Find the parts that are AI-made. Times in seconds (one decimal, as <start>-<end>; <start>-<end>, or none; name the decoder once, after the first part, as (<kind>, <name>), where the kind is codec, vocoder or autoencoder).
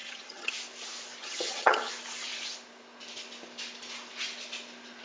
0.0-0.5 (vocoder, HiFi-GAN); 1.2-1.9